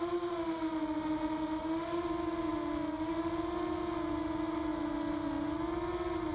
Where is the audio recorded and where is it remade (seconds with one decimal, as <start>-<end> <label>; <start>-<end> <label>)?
0.0-6.3 recorded